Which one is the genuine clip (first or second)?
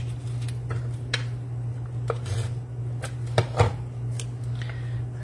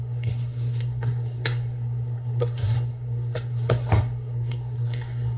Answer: first